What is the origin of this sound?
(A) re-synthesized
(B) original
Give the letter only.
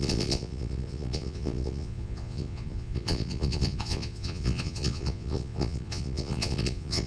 A